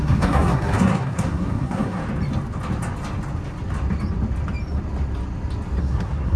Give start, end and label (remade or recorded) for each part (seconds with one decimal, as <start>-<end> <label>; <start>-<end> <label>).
0.0-2.0 remade; 2.0-5.8 recorded; 5.8-6.4 remade